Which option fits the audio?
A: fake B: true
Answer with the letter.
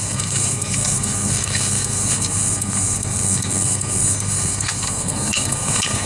A